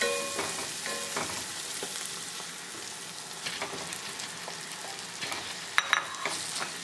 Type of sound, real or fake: real